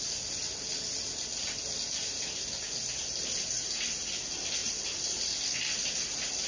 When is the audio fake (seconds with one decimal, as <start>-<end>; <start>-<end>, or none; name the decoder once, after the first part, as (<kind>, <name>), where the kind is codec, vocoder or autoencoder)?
4.6-5.2 (vocoder, BigVGAN v2)

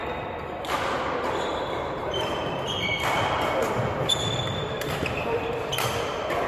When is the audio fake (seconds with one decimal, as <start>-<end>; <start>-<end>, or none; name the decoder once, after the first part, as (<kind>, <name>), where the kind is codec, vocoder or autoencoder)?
1.5-2.9 (vocoder, BigVGAN v2); 4.1-5.7

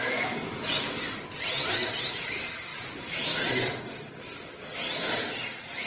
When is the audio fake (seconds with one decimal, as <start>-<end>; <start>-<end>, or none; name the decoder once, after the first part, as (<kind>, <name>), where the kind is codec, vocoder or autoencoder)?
0.0-5.9 (vocoder, BigVGAN v2)

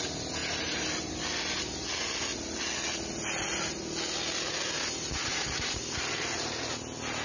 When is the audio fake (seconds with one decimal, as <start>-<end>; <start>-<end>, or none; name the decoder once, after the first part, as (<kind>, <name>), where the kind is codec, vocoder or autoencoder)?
0.4-1.1 (vocoder, BigVGAN v2); 5.3-5.8

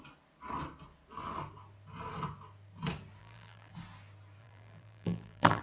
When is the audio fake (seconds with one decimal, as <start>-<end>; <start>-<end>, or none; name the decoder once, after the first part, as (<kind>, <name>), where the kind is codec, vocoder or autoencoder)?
3.2-3.7 (vocoder, BigVGAN v2); 4.4-5.6

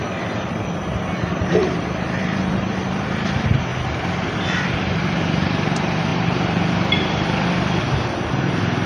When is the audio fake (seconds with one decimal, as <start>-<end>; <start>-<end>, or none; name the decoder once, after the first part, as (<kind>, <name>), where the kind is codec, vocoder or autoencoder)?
0.8-3.7 (vocoder, BigVGAN v2); 4.6-8.9

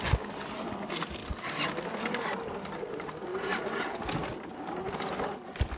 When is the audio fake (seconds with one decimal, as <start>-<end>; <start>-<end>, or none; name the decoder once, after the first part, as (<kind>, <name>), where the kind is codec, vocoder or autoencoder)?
none